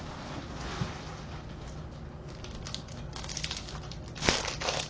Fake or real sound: real